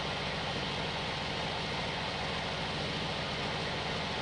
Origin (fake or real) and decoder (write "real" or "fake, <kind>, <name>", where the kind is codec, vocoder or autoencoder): fake, vocoder, Vocos